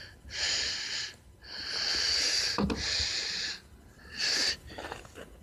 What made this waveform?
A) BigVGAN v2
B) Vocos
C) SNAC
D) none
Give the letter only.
D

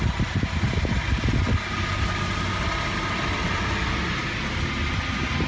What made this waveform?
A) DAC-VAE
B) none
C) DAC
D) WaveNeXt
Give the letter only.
B